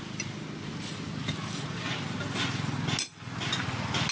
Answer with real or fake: real